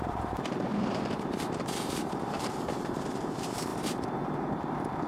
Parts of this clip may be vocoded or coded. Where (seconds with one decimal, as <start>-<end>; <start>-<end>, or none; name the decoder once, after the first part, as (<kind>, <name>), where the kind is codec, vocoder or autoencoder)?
0.0-3.7 (vocoder, BigVGAN v2); 4.6-5.1